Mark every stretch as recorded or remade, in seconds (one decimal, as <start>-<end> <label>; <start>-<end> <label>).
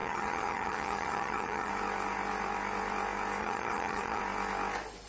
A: 0.0-1.7 remade; 1.7-3.4 recorded; 3.4-4.2 remade; 4.2-5.1 recorded